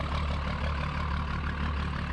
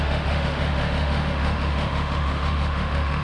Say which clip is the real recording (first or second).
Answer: first